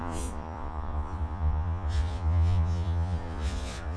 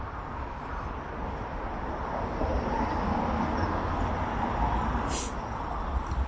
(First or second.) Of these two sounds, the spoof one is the first